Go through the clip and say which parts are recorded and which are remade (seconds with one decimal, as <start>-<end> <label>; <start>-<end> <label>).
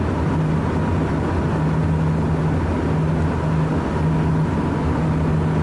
0.0-5.6 recorded